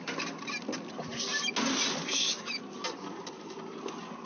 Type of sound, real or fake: real